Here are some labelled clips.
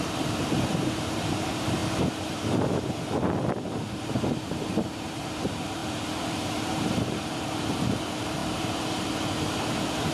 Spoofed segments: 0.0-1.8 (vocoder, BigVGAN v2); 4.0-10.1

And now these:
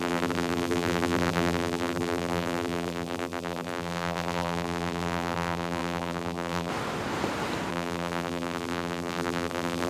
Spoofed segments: 0.0-6.7 (vocoder, BigVGAN v2); 7.7-9.9

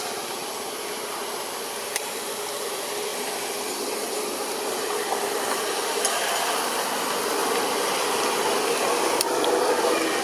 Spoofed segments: 0.4-1.2 (vocoder, BigVGAN v2); 3.1-6.6

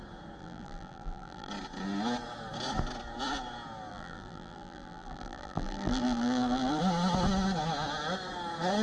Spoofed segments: 0.4-1.5 (vocoder, BigVGAN v2); 3.9-6.8